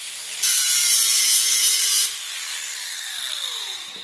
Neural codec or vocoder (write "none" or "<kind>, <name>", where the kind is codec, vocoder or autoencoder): none